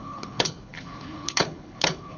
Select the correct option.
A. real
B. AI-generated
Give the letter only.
B